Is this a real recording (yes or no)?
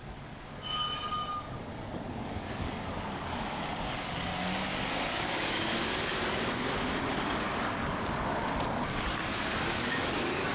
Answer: no